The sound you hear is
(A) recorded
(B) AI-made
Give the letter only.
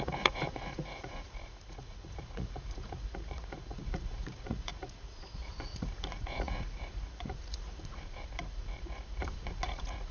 B